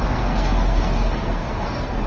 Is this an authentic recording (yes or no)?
no